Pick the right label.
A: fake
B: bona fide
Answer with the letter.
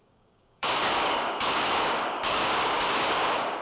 A